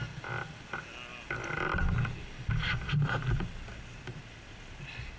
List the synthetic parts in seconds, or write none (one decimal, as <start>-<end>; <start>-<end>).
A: none